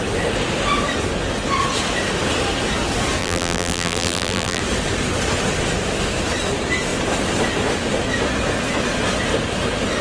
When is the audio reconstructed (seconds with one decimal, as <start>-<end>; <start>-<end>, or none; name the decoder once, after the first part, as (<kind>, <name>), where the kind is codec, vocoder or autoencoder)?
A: 3.2-4.6 (vocoder, BigVGAN v2)